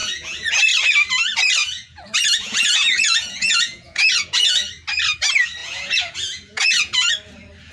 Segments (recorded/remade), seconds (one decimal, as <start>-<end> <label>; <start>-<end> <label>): 0.0-0.6 remade; 0.6-1.6 recorded; 1.6-4.7 remade; 4.7-5.6 recorded; 5.6-7.1 remade; 7.1-7.7 recorded